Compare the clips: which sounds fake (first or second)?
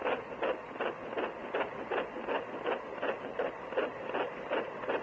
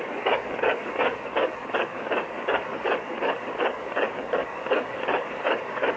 second